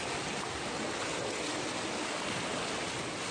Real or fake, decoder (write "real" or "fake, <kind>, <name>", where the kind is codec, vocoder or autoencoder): real